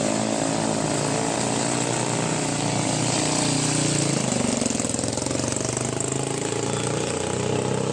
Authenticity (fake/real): real